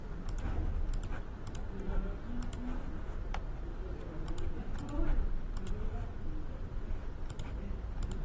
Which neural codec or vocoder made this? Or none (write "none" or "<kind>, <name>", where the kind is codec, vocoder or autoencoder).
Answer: none